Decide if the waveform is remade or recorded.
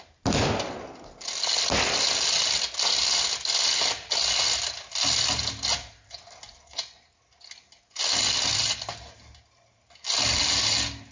recorded